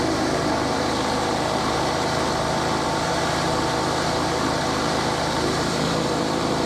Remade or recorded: remade